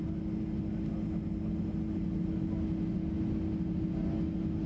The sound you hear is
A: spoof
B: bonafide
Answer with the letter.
B